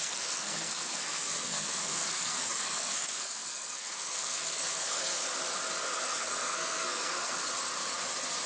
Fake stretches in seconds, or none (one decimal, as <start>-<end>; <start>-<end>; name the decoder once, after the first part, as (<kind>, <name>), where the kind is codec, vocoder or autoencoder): 0.0-5.1 (codec, SNAC); 6.0-7.4